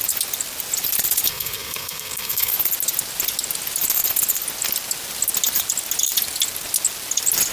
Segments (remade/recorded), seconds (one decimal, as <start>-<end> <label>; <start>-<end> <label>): 0.0-1.3 recorded; 1.3-2.5 remade; 2.5-7.5 recorded